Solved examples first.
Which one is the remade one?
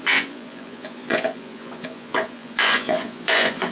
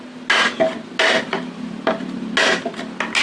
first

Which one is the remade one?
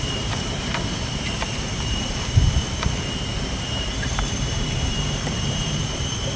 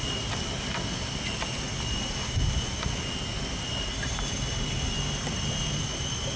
first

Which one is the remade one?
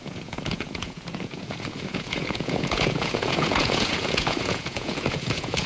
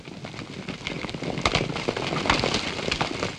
first